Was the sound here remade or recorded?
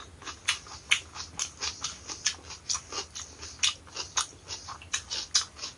recorded